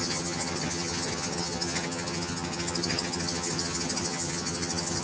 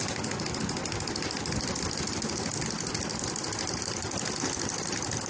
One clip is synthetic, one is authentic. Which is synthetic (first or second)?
first